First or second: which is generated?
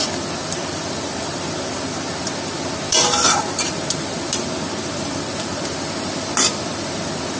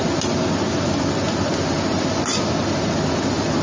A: first